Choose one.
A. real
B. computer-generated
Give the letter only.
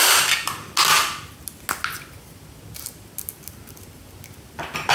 A